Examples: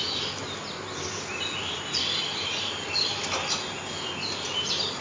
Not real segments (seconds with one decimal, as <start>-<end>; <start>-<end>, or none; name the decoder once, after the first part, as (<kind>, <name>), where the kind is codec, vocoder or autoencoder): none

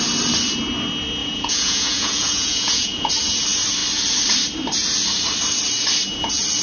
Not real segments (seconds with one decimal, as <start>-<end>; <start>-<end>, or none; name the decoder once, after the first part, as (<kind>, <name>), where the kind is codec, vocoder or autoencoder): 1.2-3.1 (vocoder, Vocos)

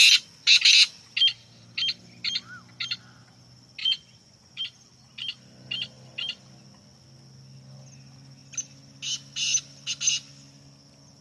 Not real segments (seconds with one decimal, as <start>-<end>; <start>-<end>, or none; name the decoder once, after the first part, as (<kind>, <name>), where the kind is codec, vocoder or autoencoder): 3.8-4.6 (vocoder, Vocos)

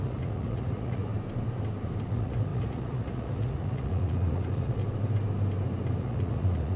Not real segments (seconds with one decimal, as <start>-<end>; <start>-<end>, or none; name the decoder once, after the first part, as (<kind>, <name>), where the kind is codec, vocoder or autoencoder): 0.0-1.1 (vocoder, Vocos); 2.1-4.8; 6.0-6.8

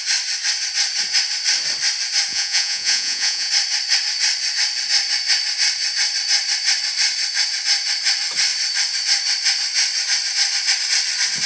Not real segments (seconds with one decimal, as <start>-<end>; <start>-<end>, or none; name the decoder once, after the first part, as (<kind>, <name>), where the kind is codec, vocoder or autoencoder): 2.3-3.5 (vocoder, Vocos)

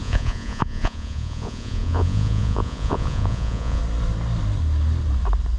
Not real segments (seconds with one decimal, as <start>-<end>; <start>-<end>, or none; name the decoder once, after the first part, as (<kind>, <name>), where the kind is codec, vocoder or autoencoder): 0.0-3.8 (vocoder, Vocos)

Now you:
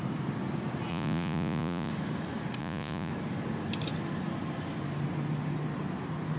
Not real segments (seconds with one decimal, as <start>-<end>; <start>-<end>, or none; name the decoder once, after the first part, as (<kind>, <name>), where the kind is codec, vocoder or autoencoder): 0.9-1.9 (vocoder, Vocos); 2.6-3.1

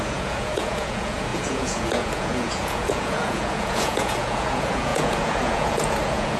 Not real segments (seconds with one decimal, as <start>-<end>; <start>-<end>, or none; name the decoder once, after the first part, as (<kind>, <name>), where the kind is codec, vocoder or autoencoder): 0.0-6.4 (vocoder, Vocos)